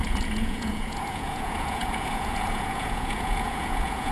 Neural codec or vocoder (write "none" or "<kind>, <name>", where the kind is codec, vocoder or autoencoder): vocoder, Vocos